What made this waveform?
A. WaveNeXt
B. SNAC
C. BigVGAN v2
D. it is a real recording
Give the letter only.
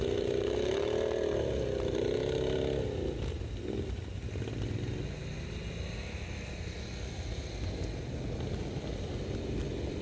D